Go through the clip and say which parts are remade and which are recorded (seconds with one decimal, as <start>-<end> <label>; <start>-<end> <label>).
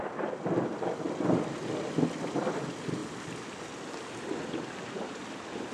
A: 0.0-5.7 recorded